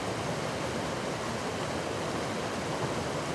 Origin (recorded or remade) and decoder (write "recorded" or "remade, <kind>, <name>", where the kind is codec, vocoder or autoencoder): recorded